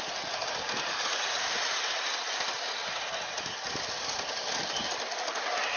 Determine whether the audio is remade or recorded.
recorded